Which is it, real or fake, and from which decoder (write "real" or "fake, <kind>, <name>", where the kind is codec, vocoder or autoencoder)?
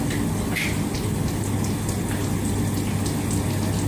real